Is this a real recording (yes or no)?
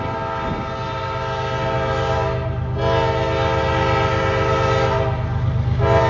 yes